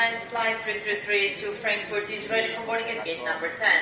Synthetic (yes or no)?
no